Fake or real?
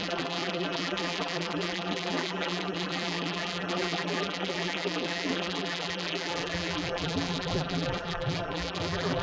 fake